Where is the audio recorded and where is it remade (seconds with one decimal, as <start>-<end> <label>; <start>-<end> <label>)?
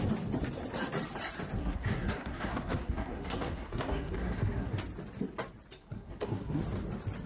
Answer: 0.0-1.6 recorded; 1.6-4.7 remade; 4.7-5.8 recorded; 5.8-6.6 remade; 6.6-7.3 recorded